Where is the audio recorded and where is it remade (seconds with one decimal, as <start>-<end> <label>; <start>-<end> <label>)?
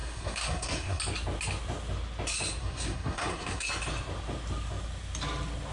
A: 0.0-1.0 remade; 1.0-2.6 recorded; 2.6-3.7 remade; 3.7-5.7 recorded